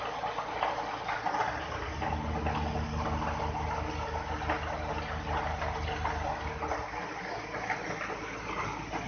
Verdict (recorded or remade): recorded